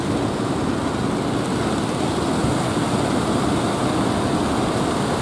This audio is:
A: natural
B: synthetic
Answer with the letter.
A